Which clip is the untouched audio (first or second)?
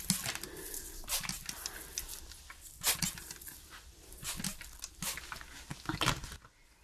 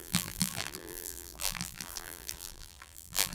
first